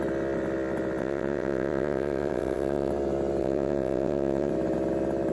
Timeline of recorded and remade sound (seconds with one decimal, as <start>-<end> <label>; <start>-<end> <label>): 0.0-1.0 recorded; 1.0-2.9 remade; 2.9-3.4 recorded; 3.4-4.5 remade; 4.5-5.3 recorded